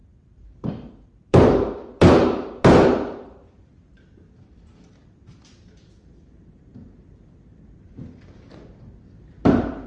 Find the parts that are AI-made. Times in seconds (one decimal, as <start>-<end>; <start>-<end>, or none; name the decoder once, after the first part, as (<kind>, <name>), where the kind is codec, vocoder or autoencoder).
0.0-9.9 (vocoder, BigVGAN v2)